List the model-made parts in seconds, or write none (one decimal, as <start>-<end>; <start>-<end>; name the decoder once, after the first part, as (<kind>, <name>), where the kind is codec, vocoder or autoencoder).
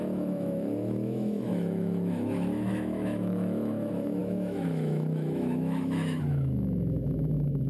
0.0-7.7 (autoencoder, DAC-VAE)